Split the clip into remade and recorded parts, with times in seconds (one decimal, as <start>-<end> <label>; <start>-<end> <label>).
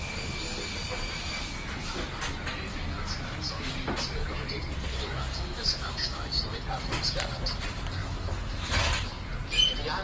0.0-2.7 recorded; 2.7-3.7 remade; 3.7-4.9 recorded; 4.9-6.2 remade; 6.2-8.0 recorded; 8.0-8.6 remade; 8.6-10.0 recorded